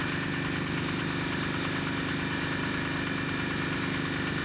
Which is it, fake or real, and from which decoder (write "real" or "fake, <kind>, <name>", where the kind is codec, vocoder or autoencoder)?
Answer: real